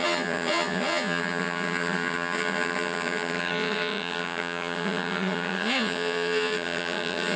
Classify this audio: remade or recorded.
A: remade